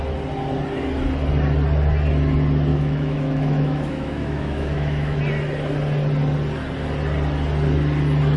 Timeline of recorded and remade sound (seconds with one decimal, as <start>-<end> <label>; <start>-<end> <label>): 0.0-2.7 recorded; 2.7-5.2 remade; 5.2-8.4 recorded